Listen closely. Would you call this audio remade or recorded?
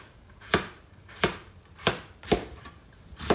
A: remade